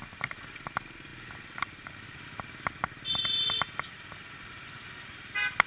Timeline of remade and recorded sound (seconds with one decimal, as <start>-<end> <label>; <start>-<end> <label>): 0.0-5.7 recorded